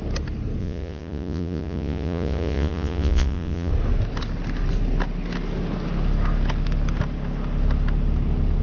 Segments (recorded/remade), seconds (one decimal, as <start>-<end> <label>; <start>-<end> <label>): 0.0-0.6 recorded; 0.6-3.7 remade; 3.7-8.6 recorded